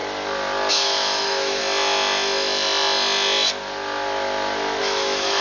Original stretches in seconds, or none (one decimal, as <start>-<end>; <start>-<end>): 0.0-0.7; 1.6-4.8